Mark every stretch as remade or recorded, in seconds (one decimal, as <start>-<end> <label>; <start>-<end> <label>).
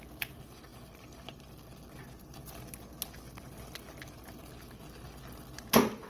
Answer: 0.0-6.1 recorded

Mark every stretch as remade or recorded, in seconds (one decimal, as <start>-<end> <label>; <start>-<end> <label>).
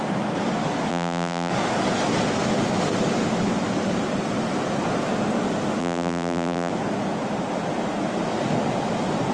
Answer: 0.0-0.9 recorded; 0.9-1.5 remade; 1.5-5.8 recorded; 5.8-6.7 remade; 6.7-9.3 recorded